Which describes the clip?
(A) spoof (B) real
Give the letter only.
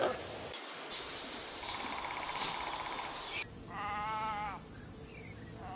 B